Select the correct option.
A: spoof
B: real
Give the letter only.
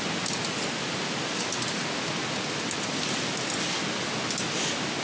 B